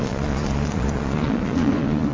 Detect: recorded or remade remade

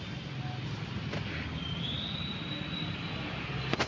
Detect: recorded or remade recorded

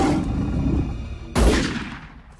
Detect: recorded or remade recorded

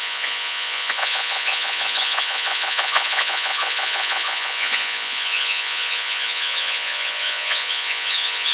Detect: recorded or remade remade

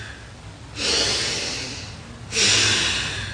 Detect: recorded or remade recorded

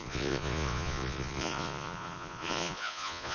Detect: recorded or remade remade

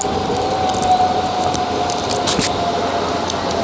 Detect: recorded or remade recorded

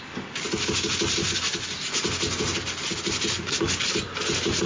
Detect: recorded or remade recorded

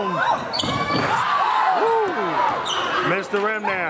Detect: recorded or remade recorded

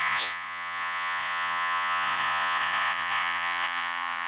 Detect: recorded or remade remade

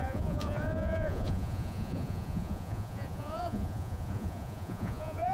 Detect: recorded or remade remade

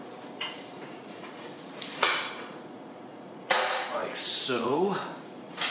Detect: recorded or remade remade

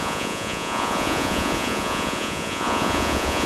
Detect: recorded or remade remade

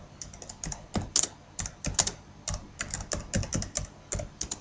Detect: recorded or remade recorded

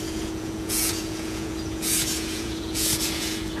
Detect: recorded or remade remade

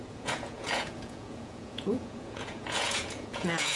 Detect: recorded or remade remade